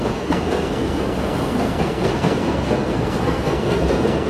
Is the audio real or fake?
fake